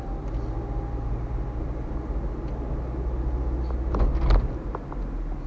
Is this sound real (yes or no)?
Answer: yes